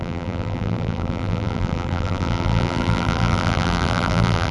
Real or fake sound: fake